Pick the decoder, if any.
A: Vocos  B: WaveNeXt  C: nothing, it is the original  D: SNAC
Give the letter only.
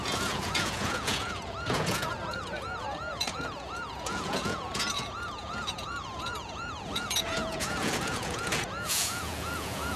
A